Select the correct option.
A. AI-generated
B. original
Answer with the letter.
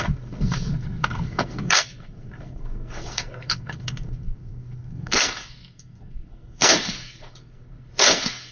A